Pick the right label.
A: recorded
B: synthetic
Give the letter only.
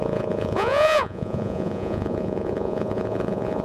B